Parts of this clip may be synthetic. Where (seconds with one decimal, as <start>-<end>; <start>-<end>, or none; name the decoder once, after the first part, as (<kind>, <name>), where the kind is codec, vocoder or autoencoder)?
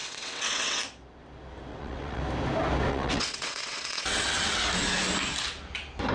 0.0-0.8 (vocoder, WaveNeXt); 1.7-2.2; 2.9-4.6